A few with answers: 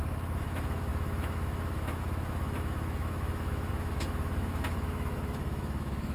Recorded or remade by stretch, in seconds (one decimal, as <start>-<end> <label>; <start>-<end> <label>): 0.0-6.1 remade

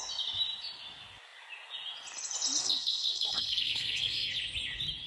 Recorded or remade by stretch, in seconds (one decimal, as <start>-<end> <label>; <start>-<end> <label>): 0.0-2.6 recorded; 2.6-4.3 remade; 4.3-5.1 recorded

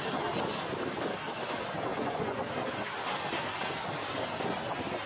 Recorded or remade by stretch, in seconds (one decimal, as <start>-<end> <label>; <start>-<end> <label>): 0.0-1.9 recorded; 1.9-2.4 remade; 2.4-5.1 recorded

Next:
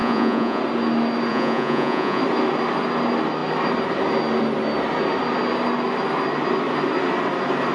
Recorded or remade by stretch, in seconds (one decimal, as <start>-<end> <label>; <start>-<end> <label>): 0.0-0.6 remade; 0.6-1.3 recorded; 1.3-2.2 remade; 2.2-7.7 recorded

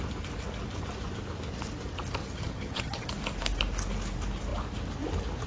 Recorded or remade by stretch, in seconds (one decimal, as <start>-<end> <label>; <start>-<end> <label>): 0.0-2.2 recorded; 2.2-3.1 remade; 3.1-5.5 recorded